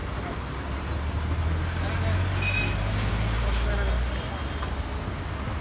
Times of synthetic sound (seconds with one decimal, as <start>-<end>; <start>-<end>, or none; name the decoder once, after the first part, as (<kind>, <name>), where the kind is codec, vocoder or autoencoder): none